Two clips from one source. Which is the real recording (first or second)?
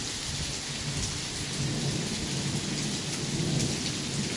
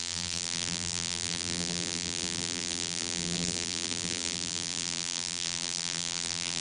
first